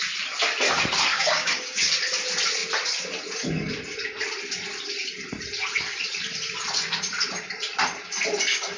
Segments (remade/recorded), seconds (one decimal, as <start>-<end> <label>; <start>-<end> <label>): 0.0-1.1 recorded; 1.1-1.9 remade; 1.9-8.8 recorded